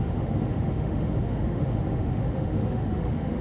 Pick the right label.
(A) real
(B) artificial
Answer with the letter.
B